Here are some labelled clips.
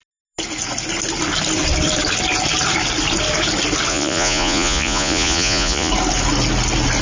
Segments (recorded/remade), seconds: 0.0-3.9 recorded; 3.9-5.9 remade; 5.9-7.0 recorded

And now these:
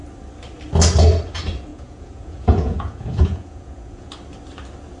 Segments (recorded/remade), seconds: 0.0-1.7 recorded; 1.7-4.1 remade; 4.1-5.0 recorded

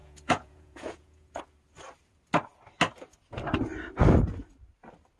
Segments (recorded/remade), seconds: 0.0-1.4 remade; 1.4-5.2 recorded

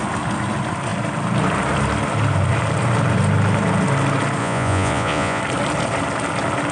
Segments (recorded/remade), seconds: 0.0-4.4 recorded; 4.4-5.4 remade; 5.4-6.7 recorded

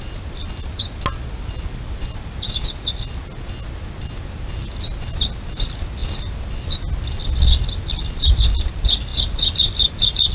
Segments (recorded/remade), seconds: 0.0-10.3 recorded

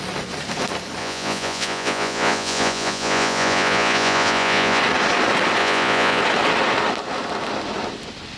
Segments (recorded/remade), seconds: 0.0-1.0 recorded; 1.0-4.8 remade; 4.8-5.6 recorded; 5.6-6.2 remade; 6.2-8.4 recorded

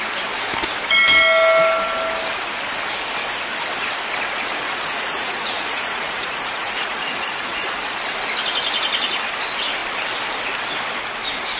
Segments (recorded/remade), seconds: 0.0-4.6 recorded; 4.6-8.0 remade; 8.0-11.6 recorded